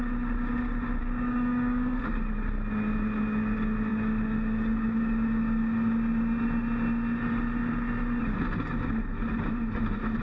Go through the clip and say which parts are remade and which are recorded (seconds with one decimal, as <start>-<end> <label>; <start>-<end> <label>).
0.0-1.0 recorded; 1.0-2.0 remade; 2.0-10.2 recorded